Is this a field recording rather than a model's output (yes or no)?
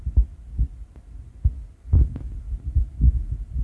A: yes